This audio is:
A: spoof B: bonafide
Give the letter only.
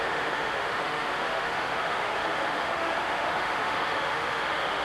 A